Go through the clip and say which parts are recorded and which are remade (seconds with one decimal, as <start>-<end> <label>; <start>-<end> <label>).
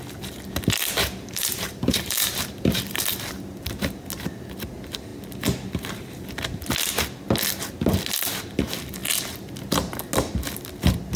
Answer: 0.0-1.0 recorded; 1.0-3.0 remade; 3.0-11.2 recorded